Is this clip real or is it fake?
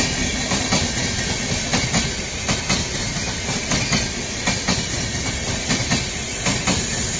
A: real